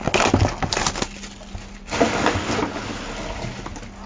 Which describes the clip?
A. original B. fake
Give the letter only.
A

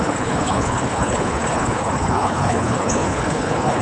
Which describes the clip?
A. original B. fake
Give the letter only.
B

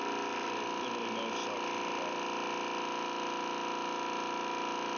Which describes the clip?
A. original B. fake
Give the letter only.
A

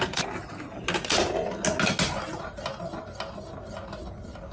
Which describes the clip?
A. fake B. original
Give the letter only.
B